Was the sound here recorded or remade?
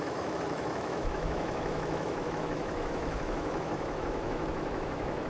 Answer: remade